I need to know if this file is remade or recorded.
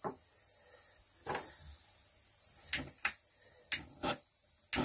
recorded